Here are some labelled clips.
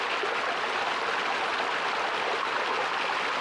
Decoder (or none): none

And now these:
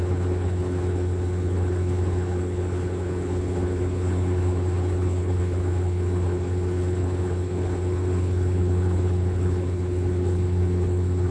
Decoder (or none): codec, HILCodec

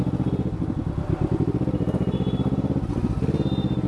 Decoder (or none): none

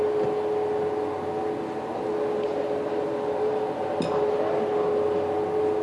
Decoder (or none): none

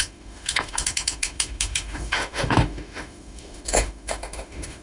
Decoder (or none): autoencoder, DAC-VAE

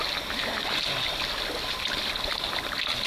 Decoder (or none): none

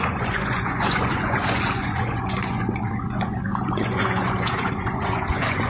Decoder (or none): vocoder, Vocos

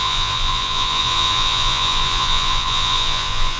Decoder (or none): vocoder, Vocos